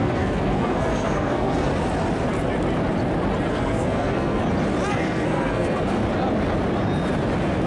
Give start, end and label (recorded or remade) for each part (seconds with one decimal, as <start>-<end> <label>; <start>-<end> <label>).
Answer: 0.0-1.7 remade; 1.7-3.5 recorded; 3.5-4.4 remade; 4.4-4.9 recorded; 4.9-6.0 remade; 6.0-7.7 recorded